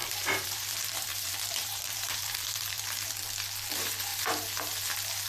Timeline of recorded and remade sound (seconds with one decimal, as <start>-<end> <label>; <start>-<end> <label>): 0.0-3.2 remade; 3.2-5.3 recorded

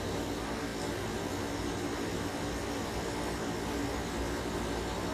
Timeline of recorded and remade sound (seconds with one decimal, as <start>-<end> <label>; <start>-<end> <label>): 0.0-5.1 recorded

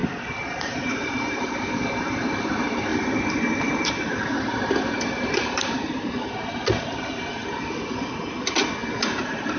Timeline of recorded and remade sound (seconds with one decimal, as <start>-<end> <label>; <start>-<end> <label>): 0.0-1.8 remade; 1.8-2.9 recorded; 2.9-5.9 remade; 5.9-7.4 recorded; 7.4-8.1 remade; 8.1-9.6 recorded

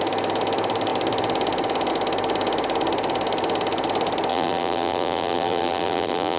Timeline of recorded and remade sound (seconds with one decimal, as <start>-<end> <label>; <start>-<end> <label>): 0.0-4.3 recorded; 4.3-6.4 remade

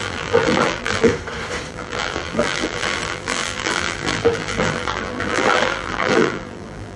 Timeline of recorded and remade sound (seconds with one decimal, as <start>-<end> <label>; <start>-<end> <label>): 0.0-1.1 remade; 1.1-1.7 recorded; 1.7-7.0 remade